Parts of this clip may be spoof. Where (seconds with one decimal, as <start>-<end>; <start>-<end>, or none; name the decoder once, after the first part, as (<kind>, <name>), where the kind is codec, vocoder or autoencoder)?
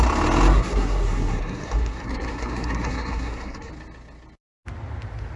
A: 0.5-3.7 (codec, SNAC)